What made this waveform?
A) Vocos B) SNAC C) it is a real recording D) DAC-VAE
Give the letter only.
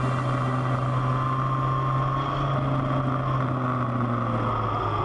C